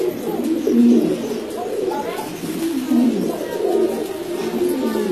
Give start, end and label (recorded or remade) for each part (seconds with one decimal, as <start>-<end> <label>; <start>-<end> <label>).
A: 0.0-5.1 recorded